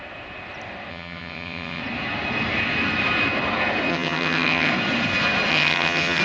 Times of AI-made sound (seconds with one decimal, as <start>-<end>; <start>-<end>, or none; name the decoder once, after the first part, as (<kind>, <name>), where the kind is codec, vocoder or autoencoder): 0.9-1.8 (vocoder, HiFi-GAN); 3.9-4.7; 5.5-6.2